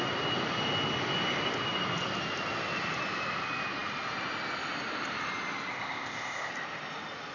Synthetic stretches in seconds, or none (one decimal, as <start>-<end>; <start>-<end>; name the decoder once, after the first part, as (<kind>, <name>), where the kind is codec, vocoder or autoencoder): 5.7-6.5 (codec, ZipCodec)